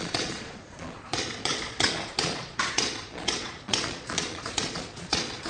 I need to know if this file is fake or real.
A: fake